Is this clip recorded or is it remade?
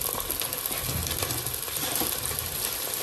recorded